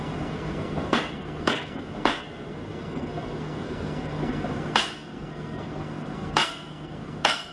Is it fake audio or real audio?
fake